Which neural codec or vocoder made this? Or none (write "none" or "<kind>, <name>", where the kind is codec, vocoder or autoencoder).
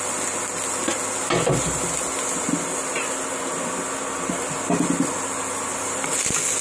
none